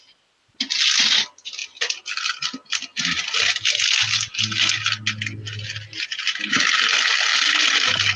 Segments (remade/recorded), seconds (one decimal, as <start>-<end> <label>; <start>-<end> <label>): 0.0-8.2 recorded